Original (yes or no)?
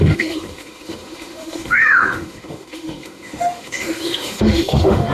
no